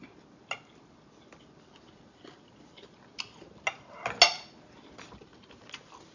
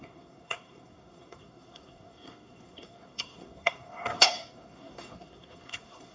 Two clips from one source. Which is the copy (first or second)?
second